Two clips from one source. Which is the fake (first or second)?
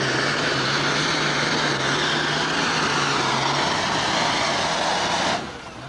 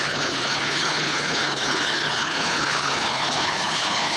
second